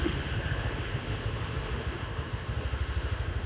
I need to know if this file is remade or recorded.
remade